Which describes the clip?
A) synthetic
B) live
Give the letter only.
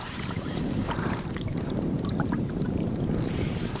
A